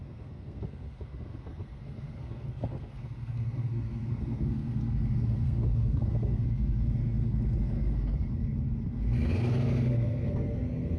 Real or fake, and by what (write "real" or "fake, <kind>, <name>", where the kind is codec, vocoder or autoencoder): fake, codec, SNAC